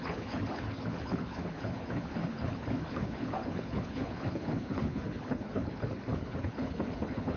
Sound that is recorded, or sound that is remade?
remade